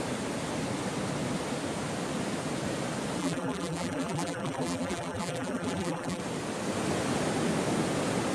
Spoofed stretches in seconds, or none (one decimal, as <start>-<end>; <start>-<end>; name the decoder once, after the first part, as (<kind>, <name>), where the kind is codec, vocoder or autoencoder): 3.2-6.2 (vocoder, BigVGAN v2)